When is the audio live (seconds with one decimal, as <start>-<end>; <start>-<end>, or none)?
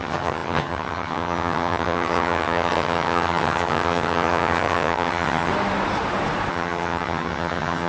5.5-6.5